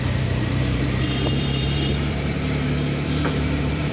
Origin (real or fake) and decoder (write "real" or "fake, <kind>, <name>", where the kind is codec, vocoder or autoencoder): fake, vocoder, BigVGAN v2